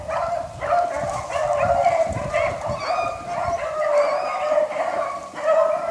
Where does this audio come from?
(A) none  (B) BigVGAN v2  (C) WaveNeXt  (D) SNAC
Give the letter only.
A